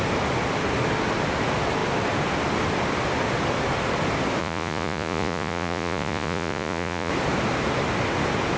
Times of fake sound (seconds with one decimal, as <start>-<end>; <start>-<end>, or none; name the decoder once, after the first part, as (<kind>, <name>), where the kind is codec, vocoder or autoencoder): 4.4-7.1 (vocoder, Vocos)